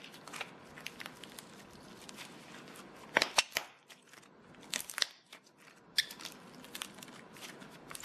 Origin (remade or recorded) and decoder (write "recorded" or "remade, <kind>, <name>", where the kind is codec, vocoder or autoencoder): recorded